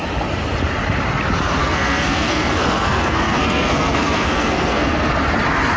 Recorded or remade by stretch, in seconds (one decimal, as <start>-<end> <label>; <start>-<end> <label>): 0.0-1.6 recorded; 1.6-5.1 remade; 5.1-5.8 recorded